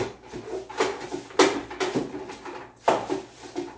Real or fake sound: real